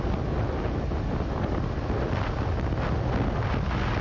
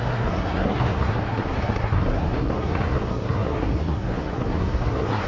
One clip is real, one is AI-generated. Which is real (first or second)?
first